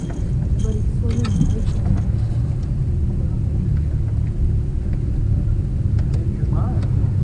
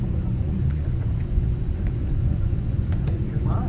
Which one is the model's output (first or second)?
second